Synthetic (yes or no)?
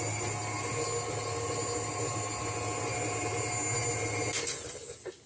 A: no